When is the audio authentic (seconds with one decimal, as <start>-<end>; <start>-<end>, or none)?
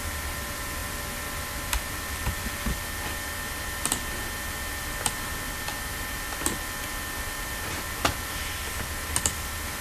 0.0-9.8